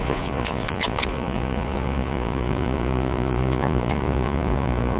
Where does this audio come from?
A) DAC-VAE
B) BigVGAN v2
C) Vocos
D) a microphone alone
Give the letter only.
C